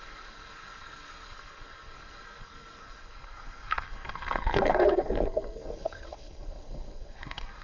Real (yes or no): no